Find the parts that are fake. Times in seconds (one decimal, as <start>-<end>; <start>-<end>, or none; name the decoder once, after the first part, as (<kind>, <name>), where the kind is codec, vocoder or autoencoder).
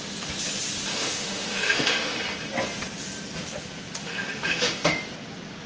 0.9-2.2 (autoencoder, DAC-VAE); 4.0-5.0